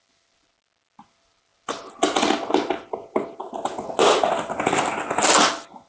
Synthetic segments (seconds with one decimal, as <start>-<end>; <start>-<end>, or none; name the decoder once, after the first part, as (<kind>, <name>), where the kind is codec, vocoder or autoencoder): none